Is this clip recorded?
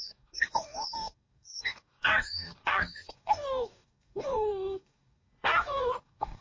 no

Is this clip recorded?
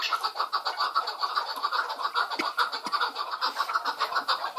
yes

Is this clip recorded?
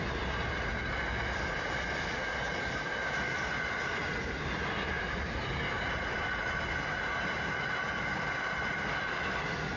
yes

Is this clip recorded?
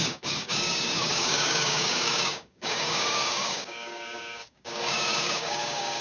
no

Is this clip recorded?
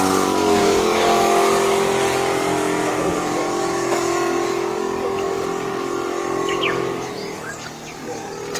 no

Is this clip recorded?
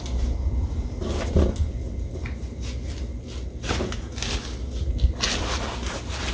yes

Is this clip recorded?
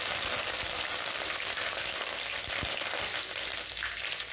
yes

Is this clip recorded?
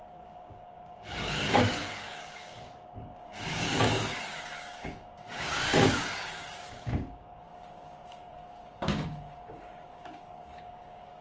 no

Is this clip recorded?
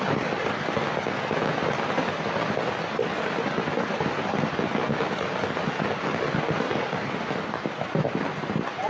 yes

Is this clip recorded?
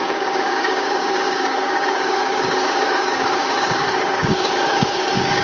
no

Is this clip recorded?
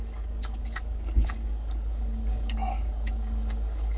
no